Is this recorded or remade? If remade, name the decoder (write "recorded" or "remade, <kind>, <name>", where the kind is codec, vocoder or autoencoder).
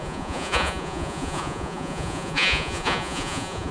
remade, vocoder, Vocos